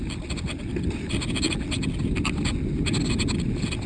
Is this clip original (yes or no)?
yes